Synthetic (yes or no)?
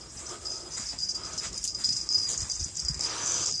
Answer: no